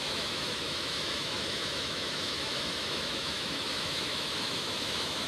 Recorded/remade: remade